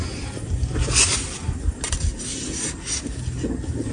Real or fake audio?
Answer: real